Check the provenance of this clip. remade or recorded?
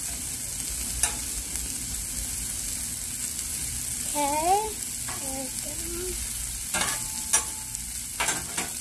recorded